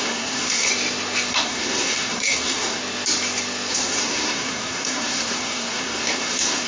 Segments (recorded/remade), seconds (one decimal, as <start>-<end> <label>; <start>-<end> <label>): 0.0-0.7 remade; 0.7-1.3 recorded; 1.3-2.8 remade; 2.8-3.7 recorded; 3.7-6.7 remade